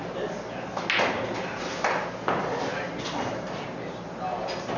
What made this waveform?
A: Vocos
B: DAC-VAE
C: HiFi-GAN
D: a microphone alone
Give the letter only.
D